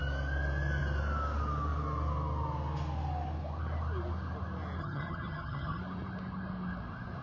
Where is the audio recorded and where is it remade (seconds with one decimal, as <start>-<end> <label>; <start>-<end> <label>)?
0.0-4.8 recorded; 4.8-5.8 remade; 5.8-7.2 recorded